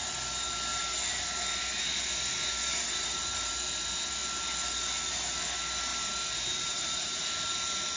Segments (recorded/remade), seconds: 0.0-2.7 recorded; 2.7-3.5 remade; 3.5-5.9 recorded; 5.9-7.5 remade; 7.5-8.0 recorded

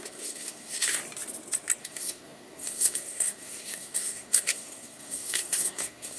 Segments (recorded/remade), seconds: 0.0-1.0 remade; 1.0-1.8 recorded; 1.8-6.2 remade

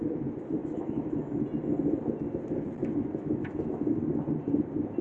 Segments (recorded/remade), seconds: 0.0-0.6 recorded; 0.6-1.4 remade; 1.4-2.8 recorded; 2.8-3.8 remade; 3.8-5.0 recorded

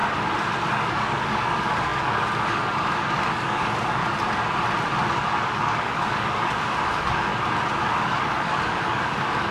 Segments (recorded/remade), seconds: 0.0-0.7 recorded; 0.7-4.0 remade; 4.0-5.1 recorded; 5.1-7.3 remade; 7.3-7.8 recorded; 7.8-9.5 remade

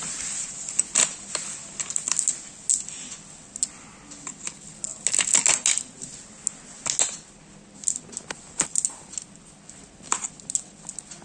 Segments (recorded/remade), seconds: 0.0-11.2 recorded

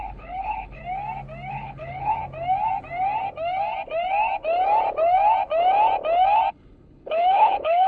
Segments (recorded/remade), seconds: 0.0-0.8 remade; 0.8-1.5 recorded; 1.5-2.2 remade; 2.2-6.5 recorded; 6.5-7.9 remade

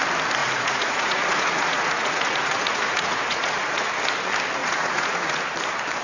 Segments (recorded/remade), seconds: 0.0-0.4 recorded; 0.4-3.9 remade; 3.9-4.6 recorded; 4.6-5.4 remade; 5.4-6.0 recorded

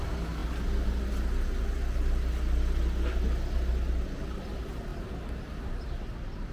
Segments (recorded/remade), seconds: 0.0-6.5 recorded